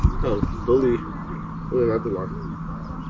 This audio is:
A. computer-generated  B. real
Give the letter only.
B